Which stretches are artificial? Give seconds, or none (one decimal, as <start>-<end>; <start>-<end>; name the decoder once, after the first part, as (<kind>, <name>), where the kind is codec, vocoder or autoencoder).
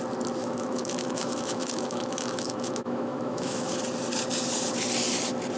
0.4-3.8 (autoencoder, DAC-VAE)